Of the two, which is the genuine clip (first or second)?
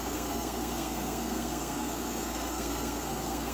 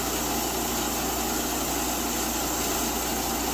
second